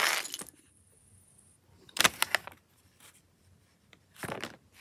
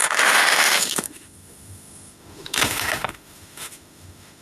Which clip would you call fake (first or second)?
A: second